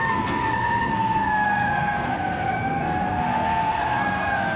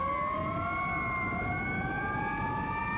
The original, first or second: second